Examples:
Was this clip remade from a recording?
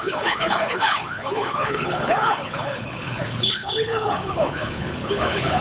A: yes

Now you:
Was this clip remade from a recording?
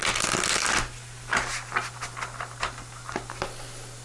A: no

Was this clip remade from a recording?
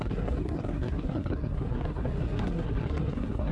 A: yes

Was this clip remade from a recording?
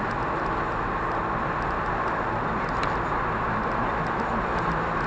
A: no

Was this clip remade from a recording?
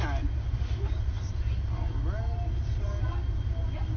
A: no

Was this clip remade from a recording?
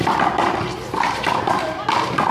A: no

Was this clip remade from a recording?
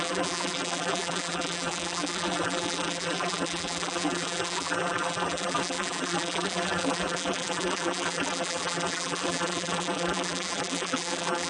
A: yes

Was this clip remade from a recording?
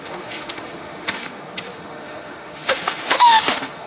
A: yes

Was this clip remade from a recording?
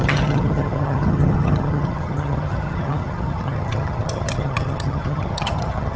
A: yes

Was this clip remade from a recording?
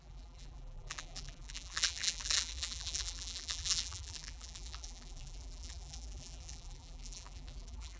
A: yes